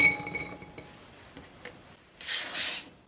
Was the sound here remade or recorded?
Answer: recorded